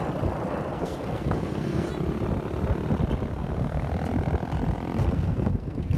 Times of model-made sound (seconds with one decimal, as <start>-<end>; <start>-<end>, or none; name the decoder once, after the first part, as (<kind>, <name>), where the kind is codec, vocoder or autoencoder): 0.7-1.9 (codec, SNAC); 3.3-3.9; 5.0-6.0